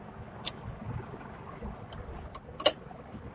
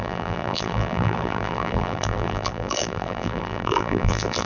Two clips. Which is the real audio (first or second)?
first